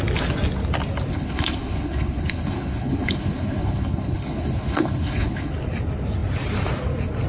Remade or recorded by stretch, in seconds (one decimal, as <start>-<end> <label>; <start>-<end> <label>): 0.0-1.1 recorded; 1.1-5.5 remade; 5.5-7.3 recorded

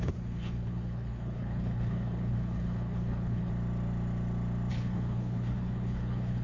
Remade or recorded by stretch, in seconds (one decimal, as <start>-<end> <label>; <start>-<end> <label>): 0.0-3.5 remade; 3.5-4.7 recorded; 4.7-6.4 remade

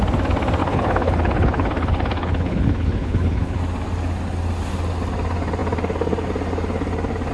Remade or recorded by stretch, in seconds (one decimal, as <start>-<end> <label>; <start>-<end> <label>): 0.0-0.6 recorded; 0.6-3.6 remade; 3.6-7.3 recorded

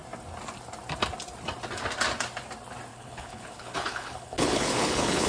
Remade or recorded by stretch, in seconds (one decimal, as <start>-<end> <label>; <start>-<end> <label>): 0.0-2.9 recorded; 2.9-5.3 remade

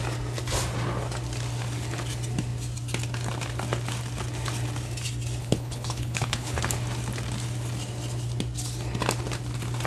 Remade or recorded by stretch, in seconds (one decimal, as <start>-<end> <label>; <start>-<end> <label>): 0.0-5.4 recorded; 5.4-6.6 remade; 6.6-9.9 recorded